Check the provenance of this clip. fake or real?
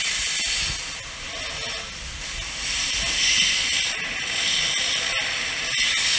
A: real